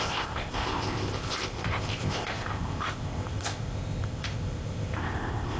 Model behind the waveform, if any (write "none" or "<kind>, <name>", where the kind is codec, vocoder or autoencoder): codec, ZipCodec